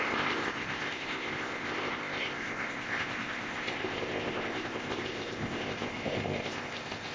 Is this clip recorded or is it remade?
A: remade